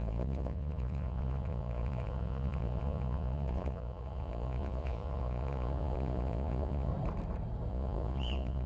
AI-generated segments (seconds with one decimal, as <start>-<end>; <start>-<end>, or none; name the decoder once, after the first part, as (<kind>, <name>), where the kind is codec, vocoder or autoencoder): 0.0-6.9 (vocoder, Vocos); 7.7-8.7